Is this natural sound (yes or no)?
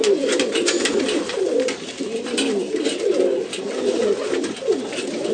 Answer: yes